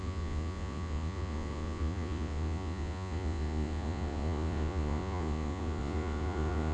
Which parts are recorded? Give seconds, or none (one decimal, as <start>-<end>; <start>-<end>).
none